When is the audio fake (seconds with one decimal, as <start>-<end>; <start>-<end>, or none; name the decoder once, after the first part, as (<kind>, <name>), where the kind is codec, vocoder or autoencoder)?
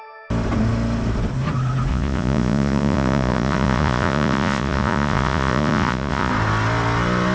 1.9-6.3 (vocoder, Vocos)